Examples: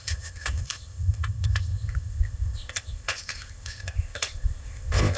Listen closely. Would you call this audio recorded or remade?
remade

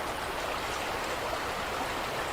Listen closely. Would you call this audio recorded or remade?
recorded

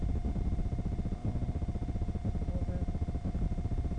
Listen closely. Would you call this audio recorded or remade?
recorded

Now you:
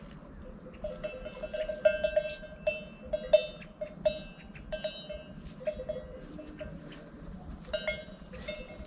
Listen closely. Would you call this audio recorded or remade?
recorded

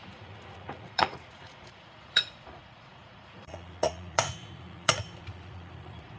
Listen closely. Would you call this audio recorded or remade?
remade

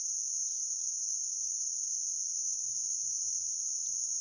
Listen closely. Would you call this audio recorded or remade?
recorded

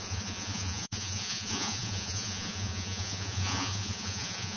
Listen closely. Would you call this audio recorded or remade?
remade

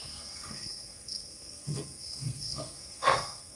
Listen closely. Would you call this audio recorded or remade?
remade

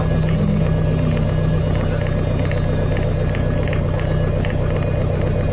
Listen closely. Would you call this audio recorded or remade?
recorded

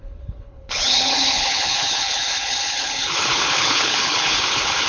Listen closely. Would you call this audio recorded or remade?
remade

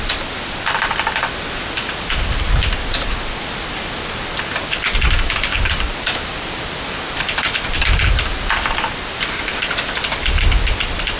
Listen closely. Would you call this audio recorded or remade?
recorded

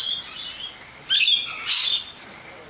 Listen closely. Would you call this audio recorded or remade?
recorded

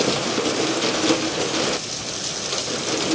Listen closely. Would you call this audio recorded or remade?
recorded